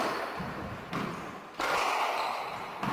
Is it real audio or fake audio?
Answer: fake